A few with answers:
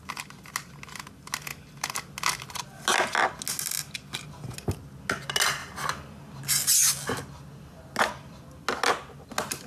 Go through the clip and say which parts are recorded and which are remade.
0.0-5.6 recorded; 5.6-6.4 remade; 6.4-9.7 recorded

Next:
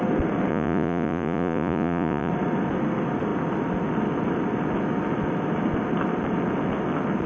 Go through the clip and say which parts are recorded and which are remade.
0.0-0.5 recorded; 0.5-2.3 remade; 2.3-7.3 recorded